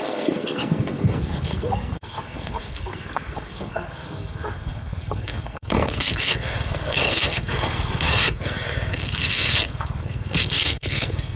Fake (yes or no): yes